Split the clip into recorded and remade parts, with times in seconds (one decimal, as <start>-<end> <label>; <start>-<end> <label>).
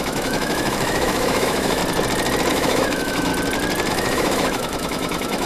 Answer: 0.0-1.8 remade; 1.8-2.5 recorded; 2.5-3.3 remade; 3.3-3.9 recorded; 3.9-5.5 remade